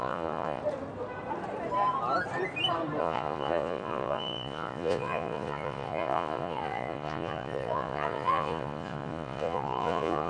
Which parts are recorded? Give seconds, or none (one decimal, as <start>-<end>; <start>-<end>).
0.6-3.0